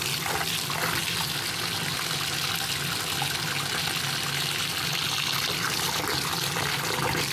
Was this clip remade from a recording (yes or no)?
no